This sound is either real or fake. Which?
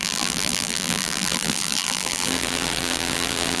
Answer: fake